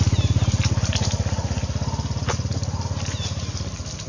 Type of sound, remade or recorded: recorded